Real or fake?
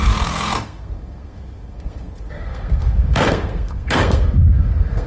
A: fake